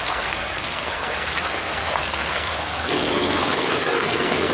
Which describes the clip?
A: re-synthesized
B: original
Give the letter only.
A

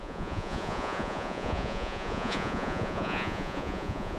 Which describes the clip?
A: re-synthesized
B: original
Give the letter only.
A